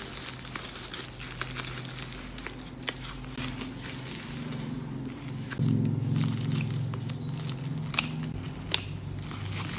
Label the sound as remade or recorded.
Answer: recorded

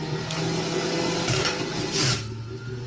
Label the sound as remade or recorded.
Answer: recorded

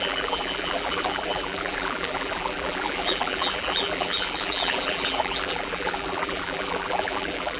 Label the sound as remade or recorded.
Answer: remade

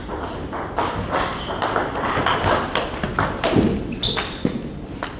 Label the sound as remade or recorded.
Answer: recorded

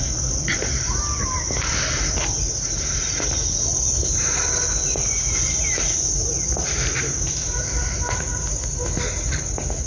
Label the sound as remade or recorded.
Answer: recorded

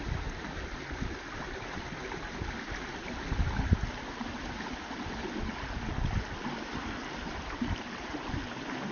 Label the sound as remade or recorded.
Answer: recorded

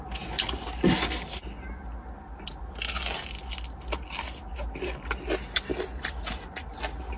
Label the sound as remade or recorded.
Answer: recorded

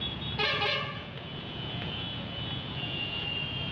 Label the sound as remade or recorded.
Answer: remade